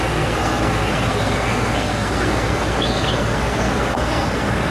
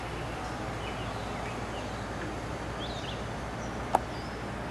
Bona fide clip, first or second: second